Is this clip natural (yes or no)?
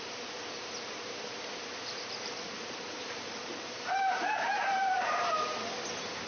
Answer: no